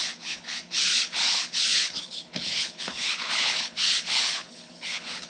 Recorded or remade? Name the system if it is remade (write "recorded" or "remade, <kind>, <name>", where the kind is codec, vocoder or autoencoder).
remade, codec, HILCodec